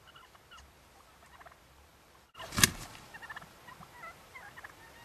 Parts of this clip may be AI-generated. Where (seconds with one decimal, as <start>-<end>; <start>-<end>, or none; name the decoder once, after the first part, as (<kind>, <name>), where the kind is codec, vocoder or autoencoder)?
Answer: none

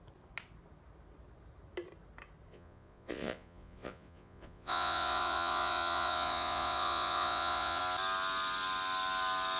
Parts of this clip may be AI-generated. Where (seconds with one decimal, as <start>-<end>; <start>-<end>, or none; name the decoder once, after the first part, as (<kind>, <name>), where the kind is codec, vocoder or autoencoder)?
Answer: 2.5-7.8 (vocoder, Vocos)

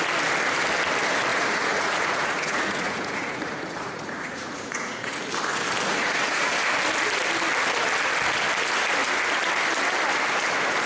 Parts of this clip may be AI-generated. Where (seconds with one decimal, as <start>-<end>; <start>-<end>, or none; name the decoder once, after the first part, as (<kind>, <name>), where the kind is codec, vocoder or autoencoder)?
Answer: 1.3-5.2 (vocoder, Vocos); 5.9-6.5

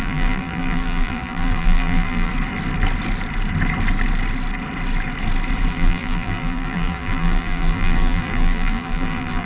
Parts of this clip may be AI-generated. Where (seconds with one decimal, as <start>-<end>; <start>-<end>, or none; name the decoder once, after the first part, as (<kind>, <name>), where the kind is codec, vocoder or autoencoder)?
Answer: 0.0-2.3 (vocoder, BigVGAN v2); 5.7-9.4

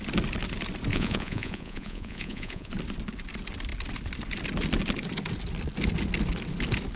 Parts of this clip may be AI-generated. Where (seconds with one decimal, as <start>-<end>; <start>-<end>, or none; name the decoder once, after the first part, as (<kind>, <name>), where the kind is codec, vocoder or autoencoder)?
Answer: 0.9-2.7 (vocoder, Vocos)

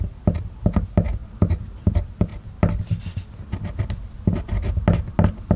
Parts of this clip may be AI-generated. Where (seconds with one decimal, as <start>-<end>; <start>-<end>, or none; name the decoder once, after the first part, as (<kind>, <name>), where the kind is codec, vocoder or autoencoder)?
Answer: none

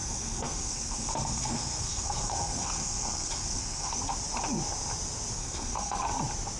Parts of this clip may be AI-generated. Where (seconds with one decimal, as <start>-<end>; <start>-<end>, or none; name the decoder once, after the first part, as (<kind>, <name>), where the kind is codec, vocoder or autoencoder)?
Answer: 0.0-4.0 (codec, SNAC); 5.4-6.0